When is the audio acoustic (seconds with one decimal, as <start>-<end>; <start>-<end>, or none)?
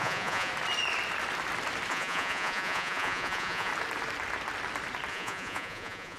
0.5-1.9; 3.7-5.1